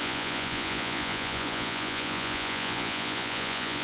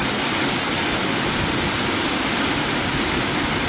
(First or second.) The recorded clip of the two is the second